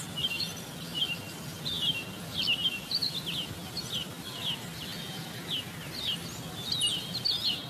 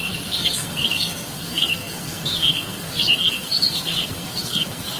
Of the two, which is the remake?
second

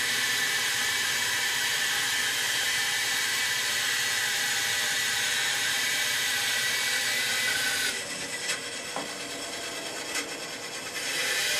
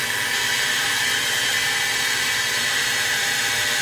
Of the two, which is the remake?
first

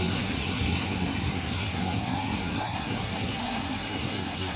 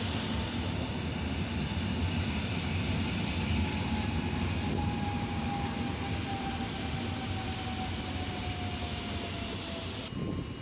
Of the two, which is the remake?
first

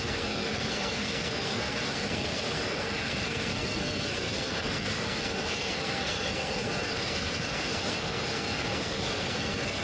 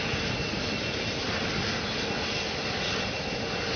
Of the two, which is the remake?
first